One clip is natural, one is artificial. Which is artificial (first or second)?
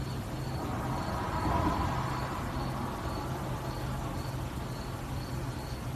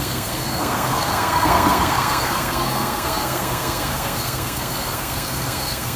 second